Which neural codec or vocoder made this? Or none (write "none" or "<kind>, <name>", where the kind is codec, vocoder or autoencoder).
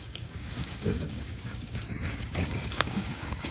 codec, DAC